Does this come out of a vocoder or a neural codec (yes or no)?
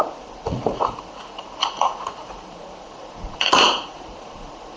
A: yes